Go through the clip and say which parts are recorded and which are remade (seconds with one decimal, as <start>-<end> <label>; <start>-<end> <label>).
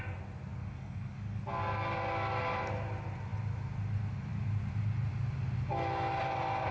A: 0.0-0.6 recorded; 0.6-1.4 remade; 1.4-6.7 recorded